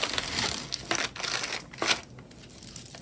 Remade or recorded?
recorded